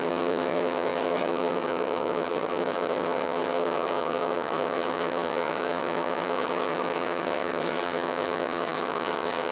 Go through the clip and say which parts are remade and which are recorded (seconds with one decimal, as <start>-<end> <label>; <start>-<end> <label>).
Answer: 0.0-9.5 remade